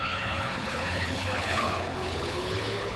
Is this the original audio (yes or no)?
no